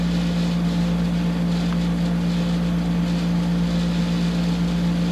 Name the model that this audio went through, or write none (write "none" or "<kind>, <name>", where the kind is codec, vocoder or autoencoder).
none